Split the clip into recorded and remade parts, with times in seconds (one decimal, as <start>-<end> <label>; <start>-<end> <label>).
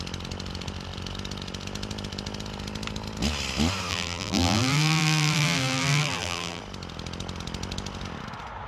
0.0-3.9 recorded; 3.9-6.6 remade; 6.6-8.7 recorded